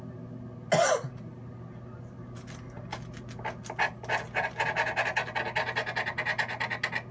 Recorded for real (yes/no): yes